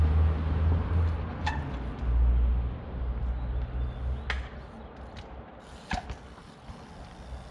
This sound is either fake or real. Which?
real